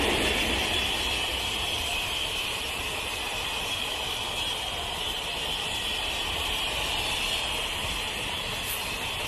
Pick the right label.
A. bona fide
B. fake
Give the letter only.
A